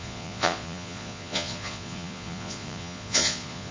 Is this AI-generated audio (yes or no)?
yes